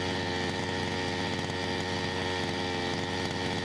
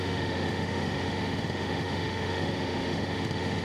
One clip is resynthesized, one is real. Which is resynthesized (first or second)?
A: second